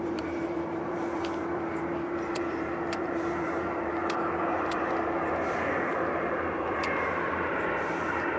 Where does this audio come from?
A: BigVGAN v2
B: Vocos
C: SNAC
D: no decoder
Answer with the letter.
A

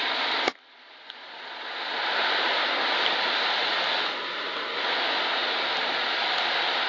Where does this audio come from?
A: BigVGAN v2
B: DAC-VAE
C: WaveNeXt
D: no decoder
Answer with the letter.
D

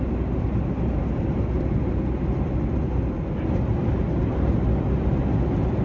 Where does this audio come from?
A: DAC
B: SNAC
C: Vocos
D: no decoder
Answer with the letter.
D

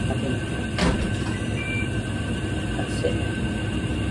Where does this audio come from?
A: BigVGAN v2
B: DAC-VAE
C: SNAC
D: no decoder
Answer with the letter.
D